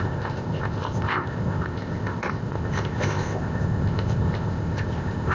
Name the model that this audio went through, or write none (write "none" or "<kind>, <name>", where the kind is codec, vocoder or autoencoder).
codec, ZipCodec